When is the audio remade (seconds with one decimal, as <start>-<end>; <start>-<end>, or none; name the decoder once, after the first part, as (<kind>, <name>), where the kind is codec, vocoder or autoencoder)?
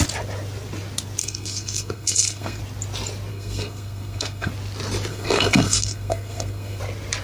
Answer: 1.2-2.6 (codec, SNAC); 3.3-4.5; 5.1-6.8